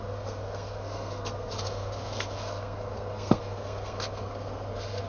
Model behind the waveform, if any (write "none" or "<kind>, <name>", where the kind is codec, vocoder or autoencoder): codec, SNAC